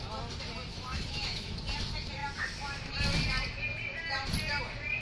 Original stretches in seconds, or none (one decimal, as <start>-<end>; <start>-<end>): 0.0-0.7; 1.6-5.0